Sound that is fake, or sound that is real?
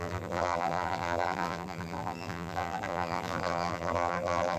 fake